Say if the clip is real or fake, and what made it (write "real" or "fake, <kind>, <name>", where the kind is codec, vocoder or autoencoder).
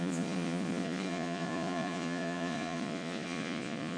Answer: fake, vocoder, Vocos